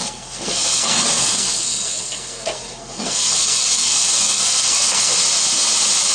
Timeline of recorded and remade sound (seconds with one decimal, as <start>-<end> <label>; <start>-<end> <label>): 0.0-5.1 remade; 5.1-6.1 recorded